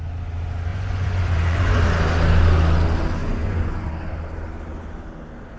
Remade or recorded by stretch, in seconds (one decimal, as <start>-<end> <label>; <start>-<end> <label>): 0.0-0.7 recorded; 0.7-1.8 remade; 1.8-3.2 recorded; 3.2-3.9 remade; 3.9-5.6 recorded